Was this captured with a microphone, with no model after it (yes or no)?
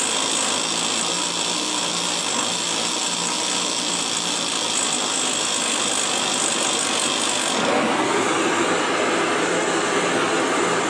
yes